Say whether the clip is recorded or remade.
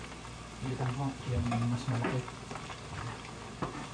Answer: recorded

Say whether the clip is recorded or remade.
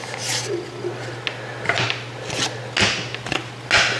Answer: recorded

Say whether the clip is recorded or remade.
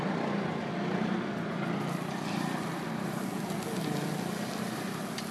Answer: recorded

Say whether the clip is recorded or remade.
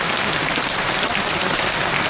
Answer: recorded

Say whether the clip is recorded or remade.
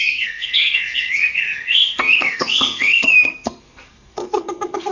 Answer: remade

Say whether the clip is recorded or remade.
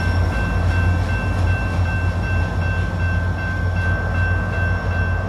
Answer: recorded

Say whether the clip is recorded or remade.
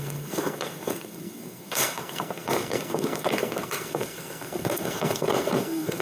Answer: remade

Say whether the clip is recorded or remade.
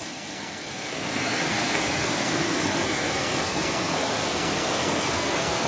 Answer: remade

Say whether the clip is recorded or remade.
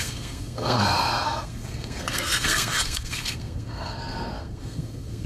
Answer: remade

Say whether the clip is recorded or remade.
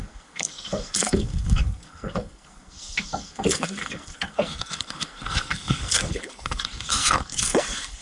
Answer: remade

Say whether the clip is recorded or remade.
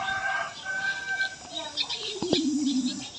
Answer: recorded